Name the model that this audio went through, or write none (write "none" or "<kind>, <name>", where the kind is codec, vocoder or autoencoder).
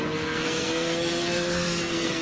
codec, SNAC